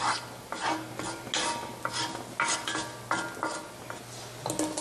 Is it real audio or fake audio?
real